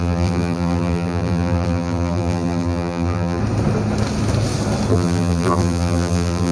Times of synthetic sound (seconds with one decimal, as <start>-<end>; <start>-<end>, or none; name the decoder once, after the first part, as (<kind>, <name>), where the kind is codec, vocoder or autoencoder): 0.0-3.4 (vocoder, BigVGAN v2); 4.9-6.5